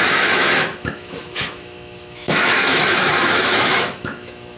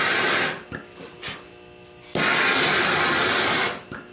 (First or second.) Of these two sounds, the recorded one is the second